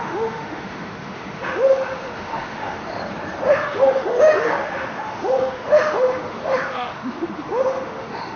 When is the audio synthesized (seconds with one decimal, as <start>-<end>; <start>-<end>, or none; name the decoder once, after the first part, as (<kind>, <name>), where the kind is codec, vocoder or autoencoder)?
0.0-3.0 (autoencoder, DAC-VAE); 3.5-8.4

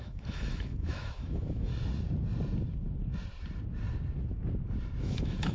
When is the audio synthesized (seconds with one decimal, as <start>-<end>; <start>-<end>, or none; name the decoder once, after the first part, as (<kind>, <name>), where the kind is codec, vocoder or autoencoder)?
0.0-1.7 (autoencoder, DAC-VAE); 5.0-5.5

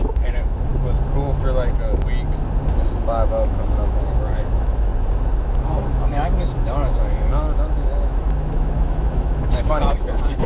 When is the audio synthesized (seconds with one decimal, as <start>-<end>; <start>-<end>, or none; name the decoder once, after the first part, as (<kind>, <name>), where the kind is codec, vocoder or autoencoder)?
0.0-0.7 (autoencoder, DAC-VAE); 3.3-4.9; 5.4-10.5

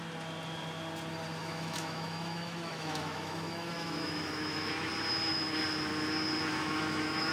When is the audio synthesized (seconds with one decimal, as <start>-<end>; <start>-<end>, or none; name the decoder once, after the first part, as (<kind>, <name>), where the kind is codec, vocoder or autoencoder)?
1.4-4.9 (autoencoder, DAC-VAE); 6.5-7.3

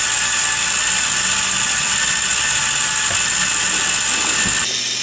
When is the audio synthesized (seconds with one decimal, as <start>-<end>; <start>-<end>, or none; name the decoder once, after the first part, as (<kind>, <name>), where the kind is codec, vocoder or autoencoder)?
none